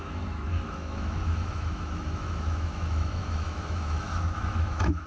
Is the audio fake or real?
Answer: fake